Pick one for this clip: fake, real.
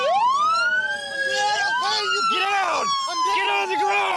real